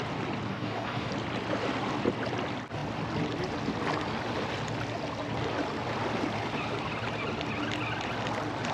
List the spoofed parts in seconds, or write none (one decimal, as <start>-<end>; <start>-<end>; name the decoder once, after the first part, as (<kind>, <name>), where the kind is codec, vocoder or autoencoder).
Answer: 0.5-1.1 (codec, DAC)